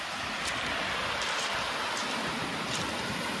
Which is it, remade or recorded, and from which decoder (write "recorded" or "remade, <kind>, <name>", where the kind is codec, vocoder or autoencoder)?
recorded